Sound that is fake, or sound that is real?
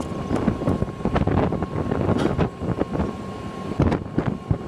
fake